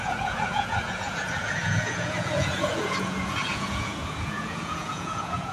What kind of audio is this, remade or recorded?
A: remade